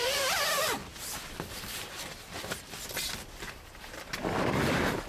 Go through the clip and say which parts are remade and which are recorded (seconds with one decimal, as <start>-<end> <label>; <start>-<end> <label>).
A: 0.0-4.2 remade; 4.2-5.1 recorded